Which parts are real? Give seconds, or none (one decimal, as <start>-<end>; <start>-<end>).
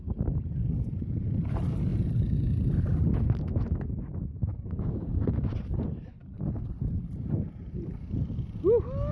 0.0-9.1